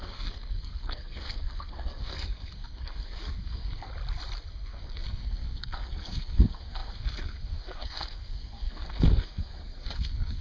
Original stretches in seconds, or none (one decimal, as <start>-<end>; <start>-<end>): 3.9-4.5